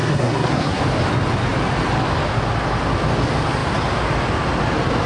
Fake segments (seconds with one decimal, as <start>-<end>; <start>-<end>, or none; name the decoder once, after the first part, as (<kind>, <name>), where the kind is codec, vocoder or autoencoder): 0.0-0.8 (codec, SNAC)